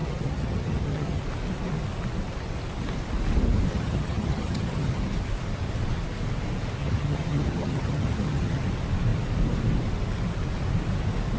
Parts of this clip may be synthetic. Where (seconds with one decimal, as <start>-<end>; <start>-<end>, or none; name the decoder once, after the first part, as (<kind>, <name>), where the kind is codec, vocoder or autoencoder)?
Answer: 0.0-1.2 (vocoder, HiFi-GAN); 3.7-5.0; 6.8-8.6